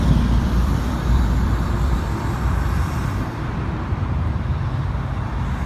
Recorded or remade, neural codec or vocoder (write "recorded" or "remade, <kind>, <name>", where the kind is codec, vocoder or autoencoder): remade, vocoder, BigVGAN v2